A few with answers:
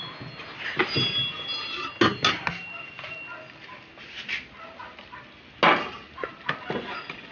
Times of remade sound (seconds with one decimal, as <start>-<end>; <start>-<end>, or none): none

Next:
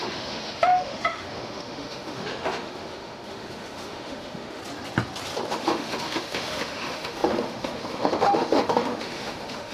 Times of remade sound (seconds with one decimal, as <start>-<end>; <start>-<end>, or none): 0.0-4.6; 5.5-9.7

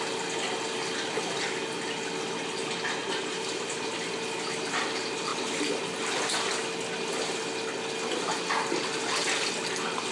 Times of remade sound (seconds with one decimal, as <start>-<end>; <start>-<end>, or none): 3.0-3.9

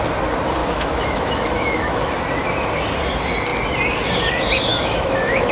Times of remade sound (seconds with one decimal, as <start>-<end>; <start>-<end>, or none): 0.6-2.2; 4.7-5.5

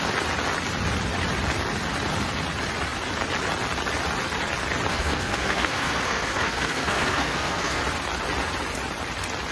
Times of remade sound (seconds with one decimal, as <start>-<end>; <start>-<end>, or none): 4.9-7.8

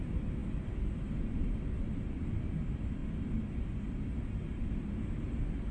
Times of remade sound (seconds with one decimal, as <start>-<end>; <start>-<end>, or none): 0.0-0.4; 2.5-3.0; 4.2-5.7

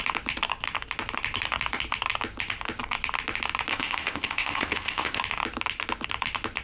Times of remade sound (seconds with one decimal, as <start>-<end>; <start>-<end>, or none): 3.7-5.2

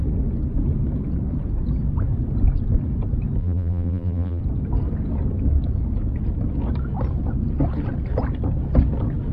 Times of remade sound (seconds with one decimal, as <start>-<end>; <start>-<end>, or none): 3.4-4.4